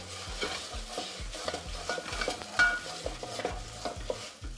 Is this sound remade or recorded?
recorded